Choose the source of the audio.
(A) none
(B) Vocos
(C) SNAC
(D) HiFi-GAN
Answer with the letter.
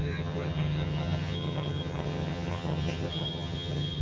D